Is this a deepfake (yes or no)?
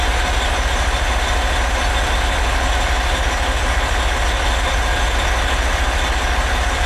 no